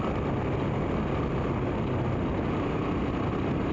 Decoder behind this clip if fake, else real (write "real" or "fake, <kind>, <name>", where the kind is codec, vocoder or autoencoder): real